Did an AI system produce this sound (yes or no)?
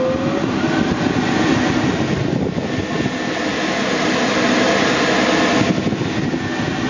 no